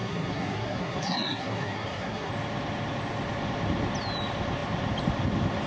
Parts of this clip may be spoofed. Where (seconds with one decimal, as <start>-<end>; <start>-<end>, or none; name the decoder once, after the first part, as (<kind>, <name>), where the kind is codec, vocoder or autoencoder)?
0.0-2.3 (codec, SNAC)